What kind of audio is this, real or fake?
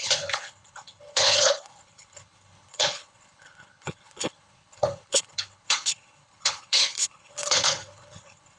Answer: fake